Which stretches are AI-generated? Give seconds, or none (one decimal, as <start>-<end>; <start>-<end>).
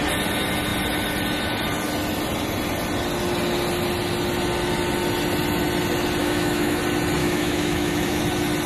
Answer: 6.2-6.8; 7.2-8.2